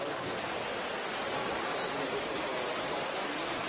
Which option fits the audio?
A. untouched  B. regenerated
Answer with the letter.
A